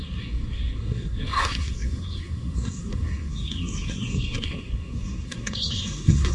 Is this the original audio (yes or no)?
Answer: no